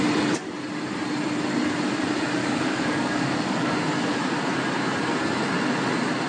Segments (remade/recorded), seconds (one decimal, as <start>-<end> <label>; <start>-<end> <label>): 0.0-2.4 recorded; 2.4-3.7 remade; 3.7-6.3 recorded